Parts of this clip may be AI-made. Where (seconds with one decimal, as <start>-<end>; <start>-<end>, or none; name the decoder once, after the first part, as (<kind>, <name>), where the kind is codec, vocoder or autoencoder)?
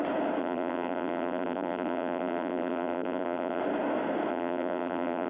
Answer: 0.4-3.6 (vocoder, BigVGAN v2); 4.3-5.3